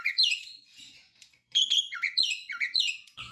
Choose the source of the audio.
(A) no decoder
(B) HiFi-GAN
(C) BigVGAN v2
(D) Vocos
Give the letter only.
D